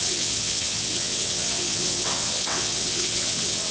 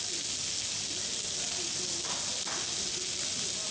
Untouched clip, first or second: second